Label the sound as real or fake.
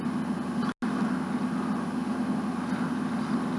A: real